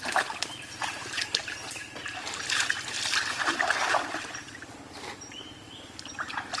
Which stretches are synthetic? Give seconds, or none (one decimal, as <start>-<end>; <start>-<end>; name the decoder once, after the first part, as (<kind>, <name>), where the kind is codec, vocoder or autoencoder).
none